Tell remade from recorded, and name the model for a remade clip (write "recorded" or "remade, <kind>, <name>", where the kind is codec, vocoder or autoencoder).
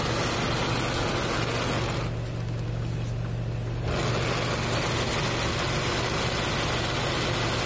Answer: recorded